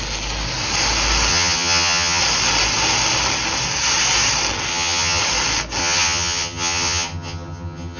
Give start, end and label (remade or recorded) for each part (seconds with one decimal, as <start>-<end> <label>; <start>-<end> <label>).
0.0-1.3 recorded; 1.3-2.2 remade; 2.2-4.7 recorded; 4.7-5.2 remade; 5.2-5.8 recorded; 5.8-8.0 remade